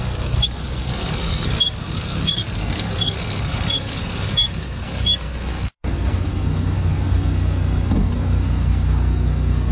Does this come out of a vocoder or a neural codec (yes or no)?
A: yes